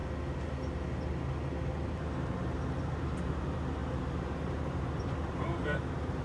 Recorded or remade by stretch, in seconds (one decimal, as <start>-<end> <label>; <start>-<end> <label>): 0.0-2.8 recorded; 2.8-6.2 remade